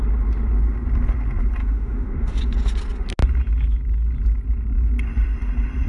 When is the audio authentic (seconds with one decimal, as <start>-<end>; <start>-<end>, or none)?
0.0-1.6; 2.4-5.9